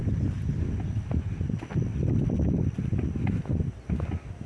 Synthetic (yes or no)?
no